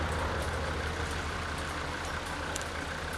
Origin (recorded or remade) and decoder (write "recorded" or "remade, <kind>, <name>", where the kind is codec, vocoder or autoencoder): recorded